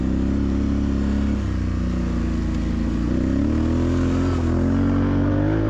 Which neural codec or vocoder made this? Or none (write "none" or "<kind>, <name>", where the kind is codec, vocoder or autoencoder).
none